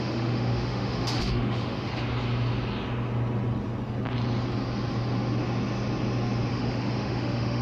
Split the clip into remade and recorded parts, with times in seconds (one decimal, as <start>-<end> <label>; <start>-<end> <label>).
0.0-1.9 remade; 1.9-6.5 recorded; 6.5-7.6 remade